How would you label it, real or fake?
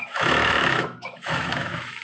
fake